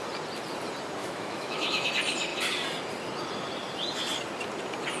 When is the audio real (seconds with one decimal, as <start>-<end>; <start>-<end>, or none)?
0.0-1.0; 1.9-5.0